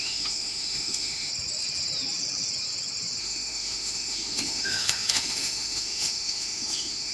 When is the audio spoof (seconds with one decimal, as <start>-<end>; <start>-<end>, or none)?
0.0-1.3; 3.2-7.1